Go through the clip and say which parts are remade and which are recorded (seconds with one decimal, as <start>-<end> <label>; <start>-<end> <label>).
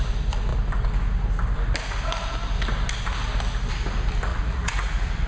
0.0-4.3 recorded; 4.3-5.3 remade